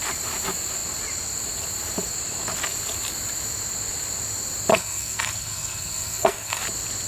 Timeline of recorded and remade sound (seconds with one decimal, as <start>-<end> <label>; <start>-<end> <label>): 0.0-4.7 recorded; 4.7-6.6 remade; 6.6-7.1 recorded